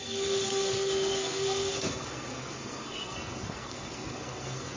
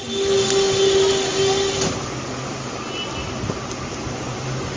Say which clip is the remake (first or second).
first